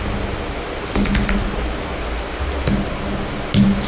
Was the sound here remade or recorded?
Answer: recorded